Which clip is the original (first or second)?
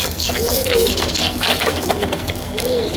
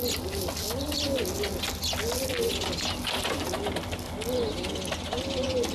second